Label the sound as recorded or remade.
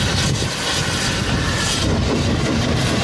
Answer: recorded